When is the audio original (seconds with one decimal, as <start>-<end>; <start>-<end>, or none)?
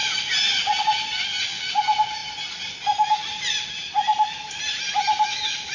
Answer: 0.0-5.7